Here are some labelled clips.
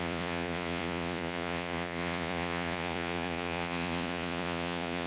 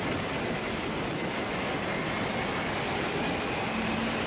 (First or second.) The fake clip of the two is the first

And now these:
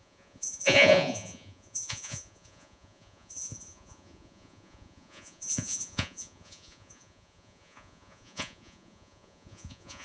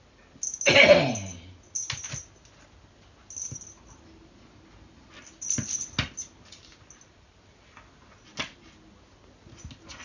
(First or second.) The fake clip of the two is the first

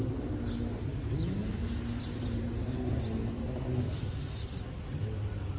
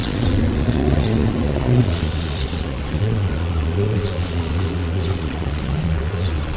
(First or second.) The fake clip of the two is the second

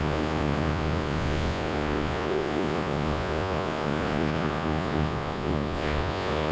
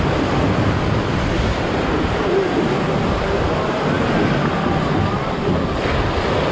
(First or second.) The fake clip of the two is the first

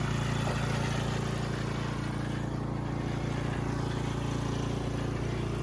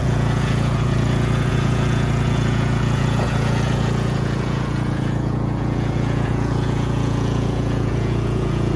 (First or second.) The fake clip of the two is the second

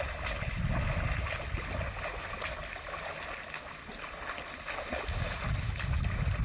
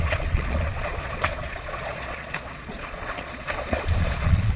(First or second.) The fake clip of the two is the second